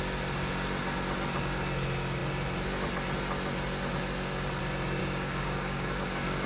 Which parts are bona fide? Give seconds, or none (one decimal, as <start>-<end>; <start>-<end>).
0.0-5.0